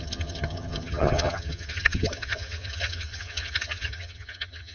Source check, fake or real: fake